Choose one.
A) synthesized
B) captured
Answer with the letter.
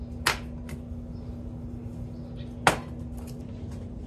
B